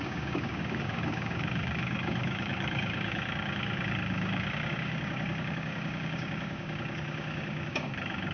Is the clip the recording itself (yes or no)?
no